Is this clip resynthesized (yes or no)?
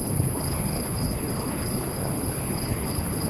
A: yes